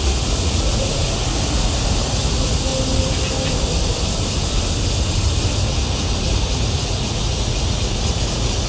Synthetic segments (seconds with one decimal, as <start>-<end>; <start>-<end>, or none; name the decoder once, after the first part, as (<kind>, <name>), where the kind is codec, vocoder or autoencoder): 0.0-2.7 (vocoder, Vocos); 6.2-8.7